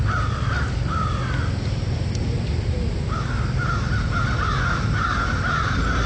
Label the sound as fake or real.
real